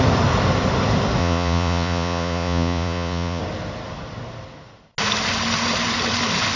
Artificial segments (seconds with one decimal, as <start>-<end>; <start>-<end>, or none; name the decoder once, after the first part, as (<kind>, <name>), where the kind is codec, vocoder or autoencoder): 1.2-3.4 (vocoder, Vocos)